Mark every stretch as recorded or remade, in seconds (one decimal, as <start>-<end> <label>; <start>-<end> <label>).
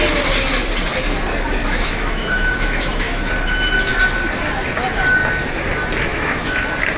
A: 0.0-1.6 recorded; 1.6-3.3 remade; 3.3-6.1 recorded; 6.1-6.6 remade; 6.6-7.0 recorded